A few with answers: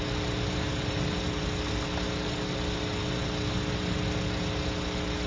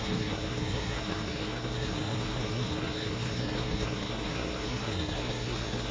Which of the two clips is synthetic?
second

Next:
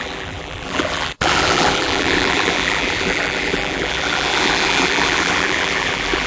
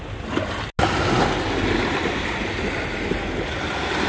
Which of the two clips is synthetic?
first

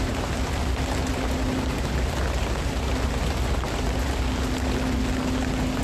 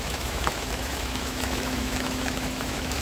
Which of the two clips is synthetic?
second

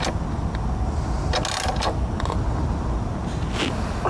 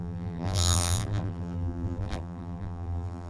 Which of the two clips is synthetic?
second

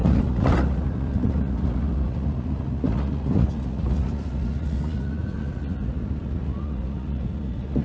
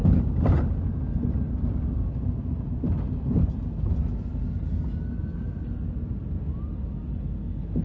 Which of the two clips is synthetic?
first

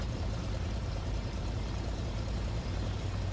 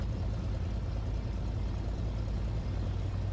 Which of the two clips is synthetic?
first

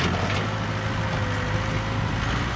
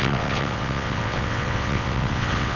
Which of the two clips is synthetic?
second